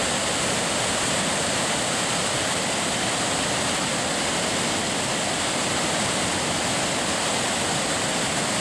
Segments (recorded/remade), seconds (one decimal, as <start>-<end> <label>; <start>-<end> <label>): 0.0-8.6 recorded